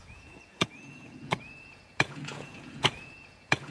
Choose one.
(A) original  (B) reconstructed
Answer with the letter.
B